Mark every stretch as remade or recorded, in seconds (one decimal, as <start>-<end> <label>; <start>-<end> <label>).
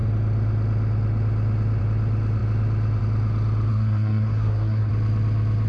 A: 0.0-3.7 recorded; 3.7-4.9 remade; 4.9-5.7 recorded